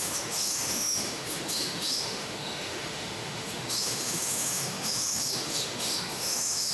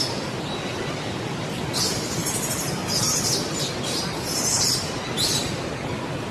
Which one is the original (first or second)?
second